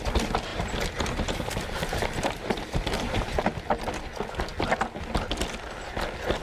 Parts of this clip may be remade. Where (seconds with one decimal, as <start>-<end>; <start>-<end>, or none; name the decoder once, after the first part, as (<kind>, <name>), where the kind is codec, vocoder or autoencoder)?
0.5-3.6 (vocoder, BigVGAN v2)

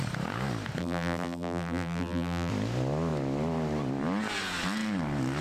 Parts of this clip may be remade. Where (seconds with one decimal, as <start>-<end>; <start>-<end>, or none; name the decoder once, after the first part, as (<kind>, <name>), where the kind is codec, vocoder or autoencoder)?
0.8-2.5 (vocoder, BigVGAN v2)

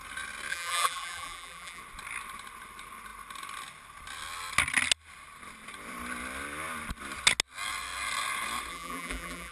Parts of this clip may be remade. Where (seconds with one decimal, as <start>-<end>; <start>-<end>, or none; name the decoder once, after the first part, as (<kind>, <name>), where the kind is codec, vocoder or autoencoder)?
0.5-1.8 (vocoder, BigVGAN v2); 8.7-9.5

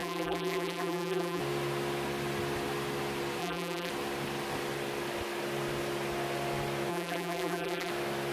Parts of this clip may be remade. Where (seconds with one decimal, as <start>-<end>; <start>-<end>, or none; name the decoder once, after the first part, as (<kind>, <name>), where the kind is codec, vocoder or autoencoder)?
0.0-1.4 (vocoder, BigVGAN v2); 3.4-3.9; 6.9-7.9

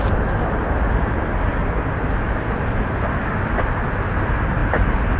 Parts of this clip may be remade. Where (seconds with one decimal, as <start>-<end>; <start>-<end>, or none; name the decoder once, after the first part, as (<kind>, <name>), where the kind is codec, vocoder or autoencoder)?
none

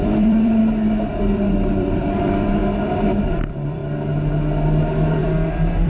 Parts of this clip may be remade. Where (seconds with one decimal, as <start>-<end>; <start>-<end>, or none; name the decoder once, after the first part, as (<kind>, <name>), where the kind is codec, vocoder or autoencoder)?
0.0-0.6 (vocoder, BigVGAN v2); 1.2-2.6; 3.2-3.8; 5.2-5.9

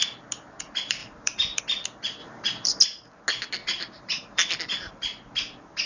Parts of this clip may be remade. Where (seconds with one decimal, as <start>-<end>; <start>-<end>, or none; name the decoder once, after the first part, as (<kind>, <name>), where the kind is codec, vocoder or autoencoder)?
1.0-1.6 (vocoder, BigVGAN v2); 2.2-2.8; 3.6-4.6

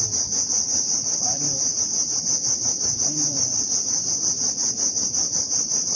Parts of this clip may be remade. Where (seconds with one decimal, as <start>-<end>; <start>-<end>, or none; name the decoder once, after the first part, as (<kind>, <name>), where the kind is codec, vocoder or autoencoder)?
0.0-4.6 (vocoder, BigVGAN v2); 5.4-6.0